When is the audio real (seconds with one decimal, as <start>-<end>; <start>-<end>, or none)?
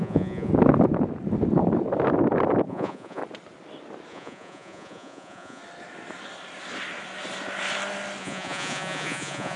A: 0.5-2.7; 3.2-4.1; 5.6-8.2